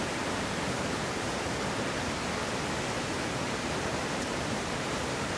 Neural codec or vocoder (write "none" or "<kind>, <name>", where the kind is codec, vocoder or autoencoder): vocoder, BigVGAN v2